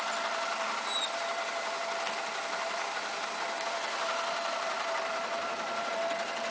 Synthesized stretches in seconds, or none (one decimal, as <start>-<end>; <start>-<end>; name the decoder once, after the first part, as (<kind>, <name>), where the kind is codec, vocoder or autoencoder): 5.1-5.9 (vocoder, BigVGAN v2)